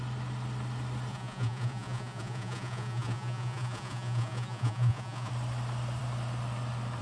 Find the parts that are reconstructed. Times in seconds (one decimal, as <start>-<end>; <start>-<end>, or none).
1.1-5.3